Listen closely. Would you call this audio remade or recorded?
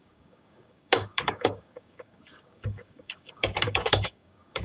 remade